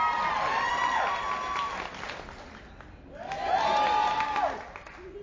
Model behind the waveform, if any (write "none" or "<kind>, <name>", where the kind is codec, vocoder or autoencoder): none